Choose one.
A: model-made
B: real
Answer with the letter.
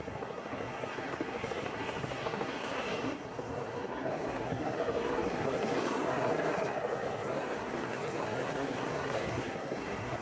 A